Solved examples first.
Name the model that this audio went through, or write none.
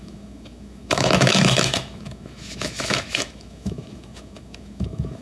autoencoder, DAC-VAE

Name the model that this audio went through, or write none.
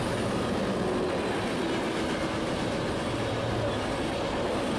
none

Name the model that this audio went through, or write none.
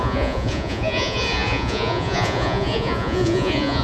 vocoder, Vocos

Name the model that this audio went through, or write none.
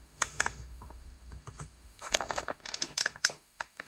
autoencoder, DAC-VAE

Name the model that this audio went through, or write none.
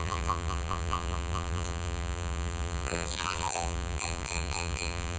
vocoder, BigVGAN v2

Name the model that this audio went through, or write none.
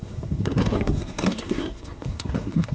codec, SNAC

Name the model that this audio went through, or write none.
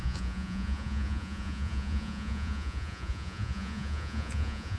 vocoder, Vocos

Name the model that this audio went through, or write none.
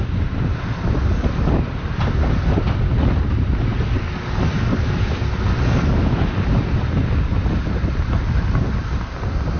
none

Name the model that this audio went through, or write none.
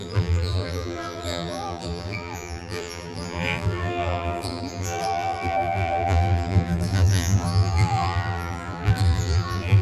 vocoder, BigVGAN v2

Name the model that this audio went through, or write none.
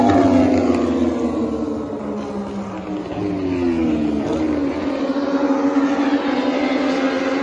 none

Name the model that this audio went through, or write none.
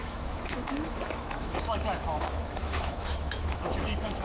autoencoder, DAC-VAE